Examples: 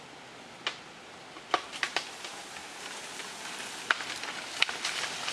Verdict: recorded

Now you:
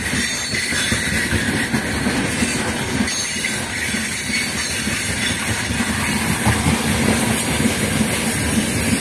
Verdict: recorded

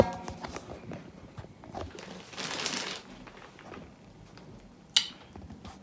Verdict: recorded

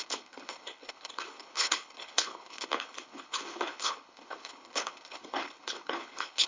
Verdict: remade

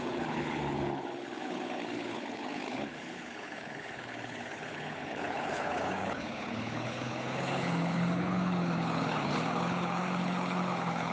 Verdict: remade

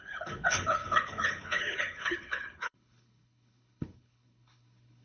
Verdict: remade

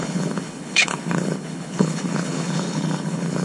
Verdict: remade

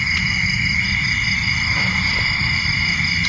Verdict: recorded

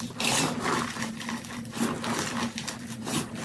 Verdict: recorded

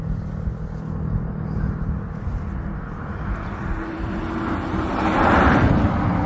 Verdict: recorded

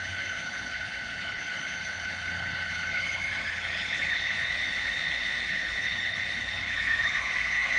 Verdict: remade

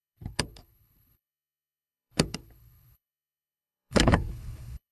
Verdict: remade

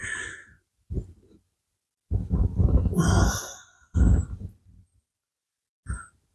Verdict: recorded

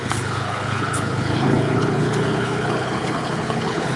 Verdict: remade